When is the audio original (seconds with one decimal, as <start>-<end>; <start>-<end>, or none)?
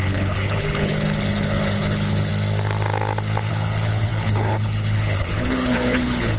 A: 2.3-3.5